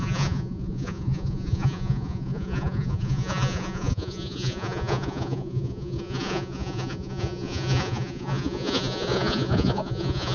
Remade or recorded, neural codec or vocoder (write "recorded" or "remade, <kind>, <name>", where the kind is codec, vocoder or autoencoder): remade, vocoder, Vocos